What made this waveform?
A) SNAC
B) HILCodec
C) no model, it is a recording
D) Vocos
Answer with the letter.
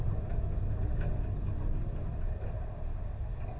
C